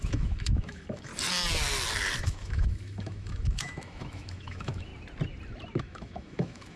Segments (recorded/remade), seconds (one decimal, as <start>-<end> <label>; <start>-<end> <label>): 0.0-1.1 remade; 1.1-2.2 recorded; 2.2-4.9 remade; 4.9-5.8 recorded; 5.8-6.8 remade